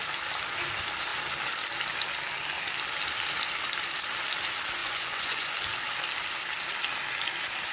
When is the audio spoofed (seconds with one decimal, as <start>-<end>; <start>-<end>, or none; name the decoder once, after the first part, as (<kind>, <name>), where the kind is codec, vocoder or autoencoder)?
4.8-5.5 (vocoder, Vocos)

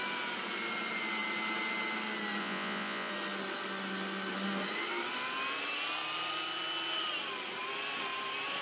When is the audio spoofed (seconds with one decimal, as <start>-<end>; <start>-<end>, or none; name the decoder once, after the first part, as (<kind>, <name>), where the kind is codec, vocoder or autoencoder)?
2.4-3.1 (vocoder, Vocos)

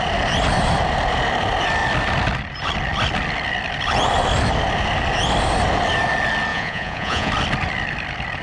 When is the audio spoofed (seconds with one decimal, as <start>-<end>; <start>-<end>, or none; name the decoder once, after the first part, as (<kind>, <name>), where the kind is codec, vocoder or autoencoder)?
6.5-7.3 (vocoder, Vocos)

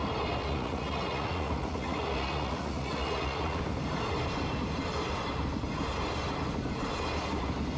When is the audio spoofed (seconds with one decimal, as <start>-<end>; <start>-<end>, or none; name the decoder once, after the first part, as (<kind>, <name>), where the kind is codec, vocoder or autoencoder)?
0.4-3.6 (vocoder, Vocos)

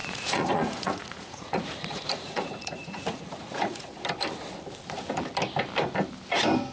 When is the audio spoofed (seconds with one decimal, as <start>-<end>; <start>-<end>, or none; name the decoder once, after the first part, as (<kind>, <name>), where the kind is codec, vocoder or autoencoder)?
0.0-4.0 (vocoder, Vocos)

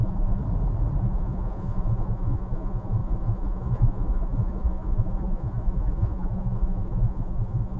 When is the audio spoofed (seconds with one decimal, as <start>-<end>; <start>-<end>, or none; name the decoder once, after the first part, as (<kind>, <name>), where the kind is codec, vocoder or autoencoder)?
0.0-0.4 (vocoder, Vocos); 1.0-7.8

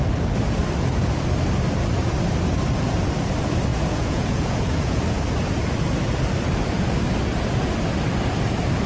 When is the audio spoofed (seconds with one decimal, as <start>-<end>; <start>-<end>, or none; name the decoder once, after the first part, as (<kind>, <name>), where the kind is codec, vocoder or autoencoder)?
3.7-5.0 (vocoder, Vocos)